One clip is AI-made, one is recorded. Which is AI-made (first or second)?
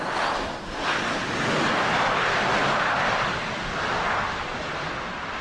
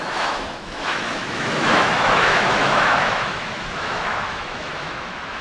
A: second